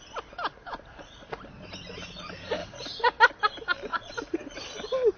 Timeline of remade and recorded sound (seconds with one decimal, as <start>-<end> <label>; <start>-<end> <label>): 0.0-0.5 recorded; 0.5-1.4 remade; 1.4-2.6 recorded; 2.6-3.2 remade; 3.2-3.9 recorded; 3.9-4.5 remade; 4.5-5.2 recorded